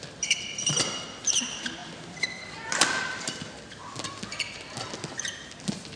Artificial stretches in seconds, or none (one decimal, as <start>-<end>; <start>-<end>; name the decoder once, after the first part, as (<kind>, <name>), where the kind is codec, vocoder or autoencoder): none